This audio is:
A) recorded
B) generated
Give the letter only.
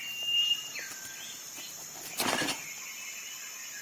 B